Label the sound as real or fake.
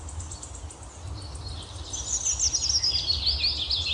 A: real